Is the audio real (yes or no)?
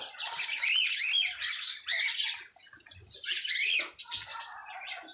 yes